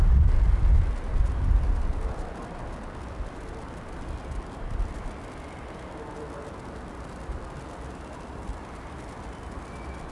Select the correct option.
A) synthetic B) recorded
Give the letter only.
B